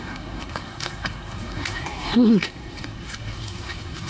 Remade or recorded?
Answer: remade